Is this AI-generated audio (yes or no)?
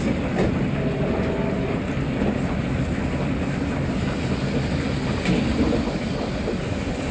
no